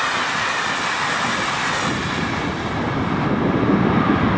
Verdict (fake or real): real